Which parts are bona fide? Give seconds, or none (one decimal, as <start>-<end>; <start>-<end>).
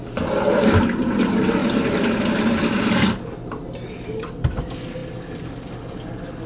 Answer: 0.0-6.5